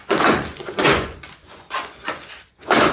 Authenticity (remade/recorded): remade